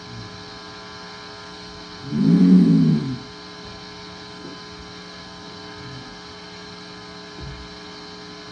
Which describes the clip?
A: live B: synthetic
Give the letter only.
A